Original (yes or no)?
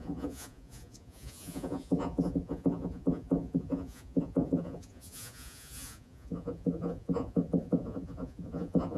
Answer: no